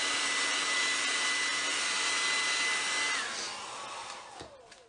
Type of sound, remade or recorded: recorded